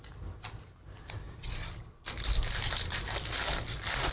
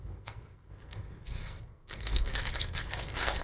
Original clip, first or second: first